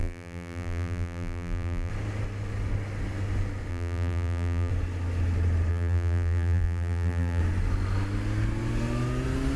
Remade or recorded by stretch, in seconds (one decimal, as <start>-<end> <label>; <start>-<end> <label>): 0.0-1.9 remade; 1.9-3.7 recorded; 3.7-4.7 remade; 4.7-5.7 recorded; 5.7-7.4 remade; 7.4-9.6 recorded